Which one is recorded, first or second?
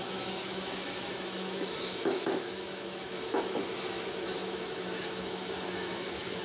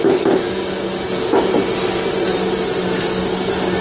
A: second